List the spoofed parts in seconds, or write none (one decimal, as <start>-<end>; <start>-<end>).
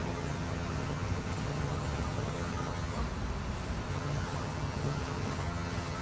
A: 0.0-3.0; 3.9-6.0